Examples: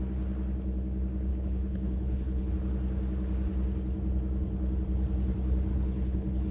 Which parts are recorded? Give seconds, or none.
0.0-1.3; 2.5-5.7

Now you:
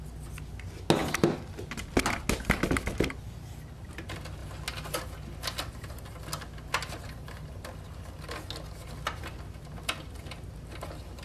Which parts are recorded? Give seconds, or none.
0.0-11.2

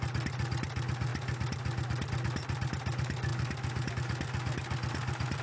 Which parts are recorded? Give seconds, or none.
0.0-5.4

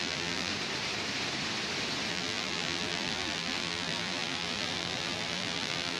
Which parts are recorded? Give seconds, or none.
0.5-2.1

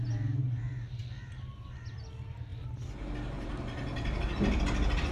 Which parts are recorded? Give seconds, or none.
0.0-2.5; 4.6-5.1

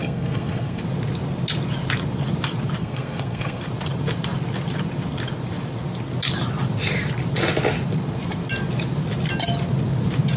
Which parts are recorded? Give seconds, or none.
0.8-2.8; 3.6-10.4

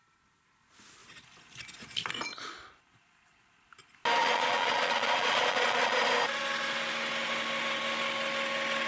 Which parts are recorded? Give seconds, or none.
0.0-4.2; 6.1-8.9

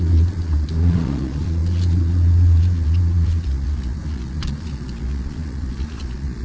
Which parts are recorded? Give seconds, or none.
none